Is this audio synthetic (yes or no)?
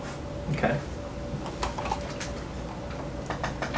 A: no